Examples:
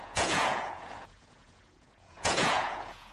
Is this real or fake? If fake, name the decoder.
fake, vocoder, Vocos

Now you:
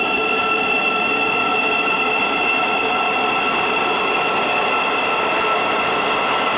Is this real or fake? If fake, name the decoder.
real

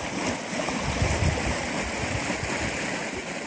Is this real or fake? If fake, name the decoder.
real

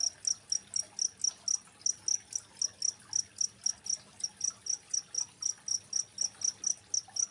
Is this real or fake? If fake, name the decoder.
real